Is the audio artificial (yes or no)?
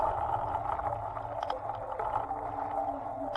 no